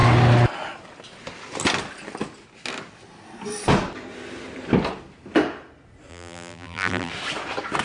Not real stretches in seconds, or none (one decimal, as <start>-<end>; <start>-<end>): 6.1-7.1